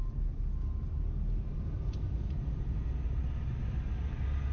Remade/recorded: recorded